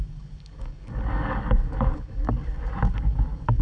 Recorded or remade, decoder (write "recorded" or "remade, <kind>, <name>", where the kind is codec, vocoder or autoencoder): remade, codec, DAC